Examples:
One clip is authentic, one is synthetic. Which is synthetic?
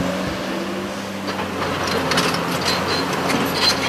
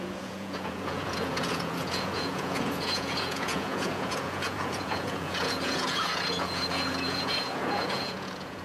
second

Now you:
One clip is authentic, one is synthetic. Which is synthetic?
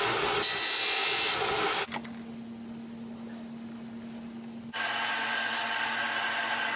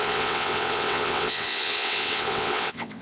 second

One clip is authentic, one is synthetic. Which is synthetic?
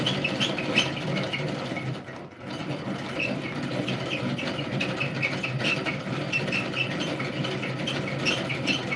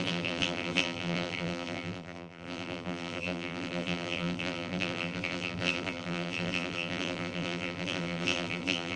second